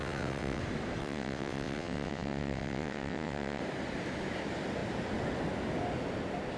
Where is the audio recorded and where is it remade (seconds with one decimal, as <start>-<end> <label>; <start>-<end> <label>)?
0.0-0.6 remade; 0.6-1.0 recorded; 1.0-3.6 remade; 3.6-6.6 recorded